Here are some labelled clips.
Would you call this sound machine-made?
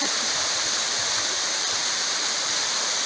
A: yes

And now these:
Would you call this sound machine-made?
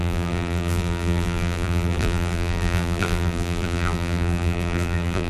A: yes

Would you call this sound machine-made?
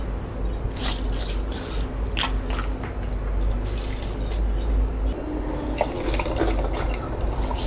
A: no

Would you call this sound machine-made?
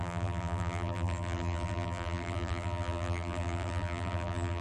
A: yes